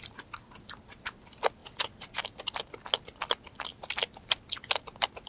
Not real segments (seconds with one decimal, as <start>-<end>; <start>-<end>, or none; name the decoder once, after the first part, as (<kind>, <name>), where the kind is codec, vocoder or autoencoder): none